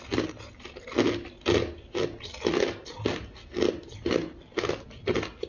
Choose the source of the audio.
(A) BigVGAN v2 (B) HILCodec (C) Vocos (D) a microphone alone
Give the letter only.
D